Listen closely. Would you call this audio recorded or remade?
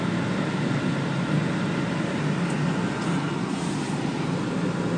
recorded